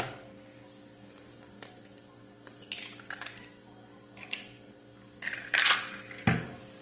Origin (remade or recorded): recorded